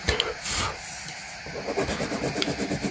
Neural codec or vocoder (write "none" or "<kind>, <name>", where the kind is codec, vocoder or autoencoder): none